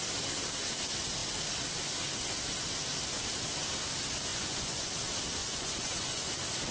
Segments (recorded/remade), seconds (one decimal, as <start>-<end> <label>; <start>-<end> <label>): 0.0-4.3 recorded; 4.3-4.9 remade; 4.9-5.4 recorded; 5.4-6.3 remade; 6.3-6.7 recorded